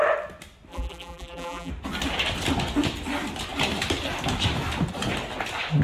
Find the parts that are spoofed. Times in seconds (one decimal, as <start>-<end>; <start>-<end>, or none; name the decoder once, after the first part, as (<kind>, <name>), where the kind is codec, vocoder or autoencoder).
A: 0.7-1.7 (vocoder, BigVGAN v2)